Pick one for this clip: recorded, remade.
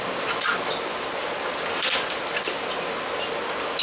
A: recorded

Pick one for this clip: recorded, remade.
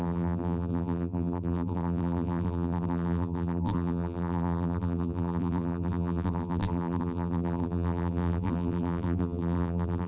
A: remade